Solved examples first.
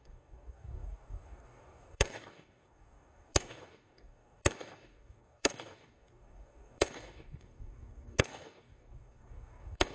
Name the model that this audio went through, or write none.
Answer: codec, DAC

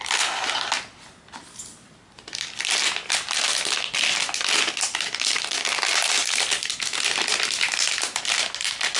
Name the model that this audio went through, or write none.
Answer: none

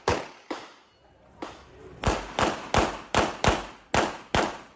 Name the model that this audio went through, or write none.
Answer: none